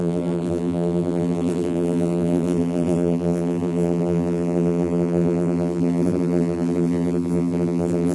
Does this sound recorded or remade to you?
remade